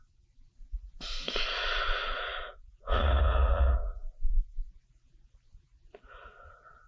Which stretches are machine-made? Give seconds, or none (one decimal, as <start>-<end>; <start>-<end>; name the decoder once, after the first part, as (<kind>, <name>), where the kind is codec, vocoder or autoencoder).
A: 0.6-4.7 (vocoder, Vocos)